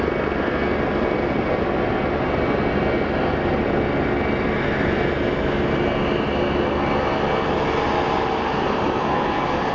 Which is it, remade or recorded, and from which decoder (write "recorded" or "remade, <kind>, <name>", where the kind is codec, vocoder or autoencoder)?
recorded